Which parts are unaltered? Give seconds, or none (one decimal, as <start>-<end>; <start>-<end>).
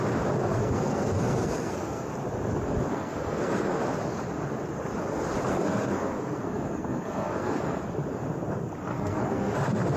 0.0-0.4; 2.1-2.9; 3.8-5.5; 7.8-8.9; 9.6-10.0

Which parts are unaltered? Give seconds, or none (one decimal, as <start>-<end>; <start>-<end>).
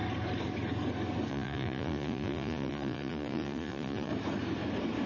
0.0-1.3; 4.1-5.1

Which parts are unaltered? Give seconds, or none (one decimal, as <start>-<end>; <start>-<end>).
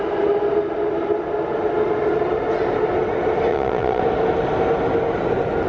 0.0-3.5; 4.0-5.7